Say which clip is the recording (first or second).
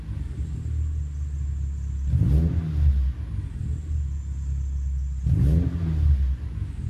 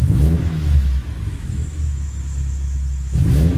first